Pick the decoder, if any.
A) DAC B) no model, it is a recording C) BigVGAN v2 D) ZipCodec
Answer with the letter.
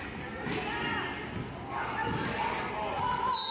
B